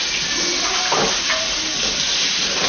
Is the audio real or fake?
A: real